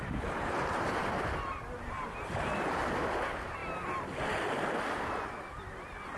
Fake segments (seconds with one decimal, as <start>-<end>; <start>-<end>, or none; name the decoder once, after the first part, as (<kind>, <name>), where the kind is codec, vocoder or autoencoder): none